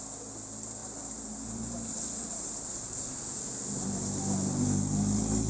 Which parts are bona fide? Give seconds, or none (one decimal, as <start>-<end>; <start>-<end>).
0.0-0.8; 2.7-5.5